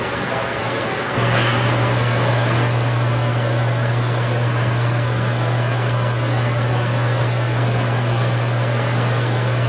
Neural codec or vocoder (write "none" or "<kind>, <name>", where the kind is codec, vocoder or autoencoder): codec, SNAC